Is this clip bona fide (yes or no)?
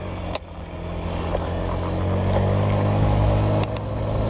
yes